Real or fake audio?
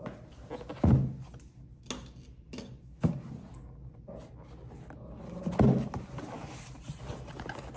real